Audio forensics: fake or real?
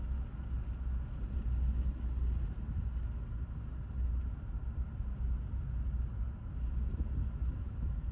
real